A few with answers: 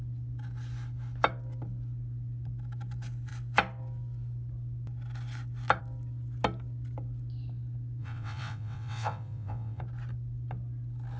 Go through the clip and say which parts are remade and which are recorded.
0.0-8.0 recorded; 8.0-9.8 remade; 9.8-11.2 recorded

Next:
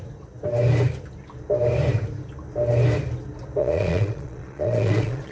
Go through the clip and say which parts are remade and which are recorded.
0.0-3.6 recorded; 3.6-5.3 remade

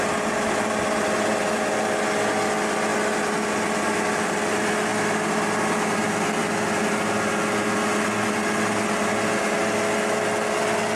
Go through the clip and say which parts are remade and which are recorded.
0.0-11.0 recorded

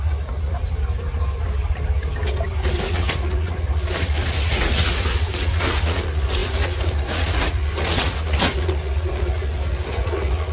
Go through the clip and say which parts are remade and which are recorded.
0.0-0.6 remade; 0.6-2.9 recorded; 2.9-10.5 remade

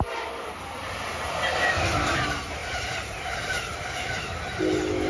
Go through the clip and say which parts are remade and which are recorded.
0.0-2.6 recorded; 2.6-3.6 remade; 3.6-5.1 recorded

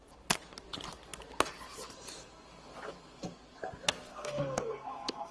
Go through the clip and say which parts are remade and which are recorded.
0.0-4.1 recorded; 4.1-5.3 remade

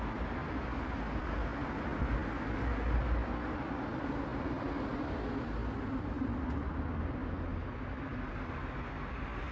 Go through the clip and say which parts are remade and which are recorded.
0.0-9.5 recorded